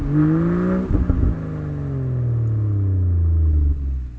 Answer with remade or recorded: recorded